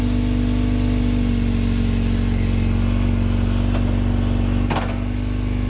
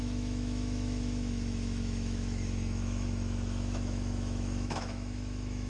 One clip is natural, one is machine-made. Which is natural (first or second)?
first